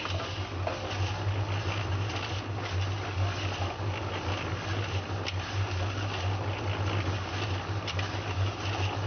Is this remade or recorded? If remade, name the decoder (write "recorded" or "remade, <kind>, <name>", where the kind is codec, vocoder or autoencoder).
recorded